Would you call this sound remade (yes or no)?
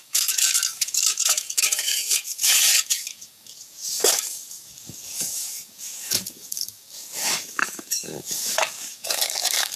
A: yes